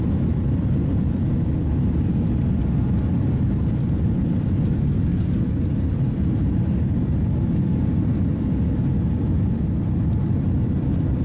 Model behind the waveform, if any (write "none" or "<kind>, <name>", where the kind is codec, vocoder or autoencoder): none